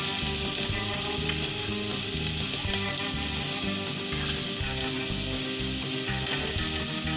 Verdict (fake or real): real